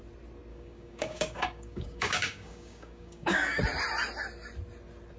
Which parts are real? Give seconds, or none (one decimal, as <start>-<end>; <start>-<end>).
0.0-0.5; 3.6-5.2